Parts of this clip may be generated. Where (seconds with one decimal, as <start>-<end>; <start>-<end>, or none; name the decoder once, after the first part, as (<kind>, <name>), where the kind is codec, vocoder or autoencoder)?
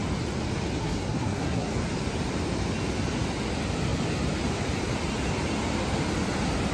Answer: 0.8-1.7 (codec, SNAC)